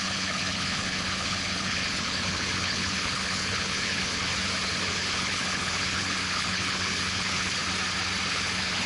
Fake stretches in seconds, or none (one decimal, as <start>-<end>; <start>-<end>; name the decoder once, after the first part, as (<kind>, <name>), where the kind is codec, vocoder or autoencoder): 0.0-4.3 (codec, HILCodec); 4.8-7.6; 8.3-8.9